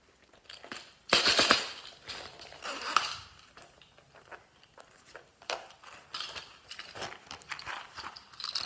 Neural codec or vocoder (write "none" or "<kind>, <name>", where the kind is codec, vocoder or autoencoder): vocoder, BigVGAN v2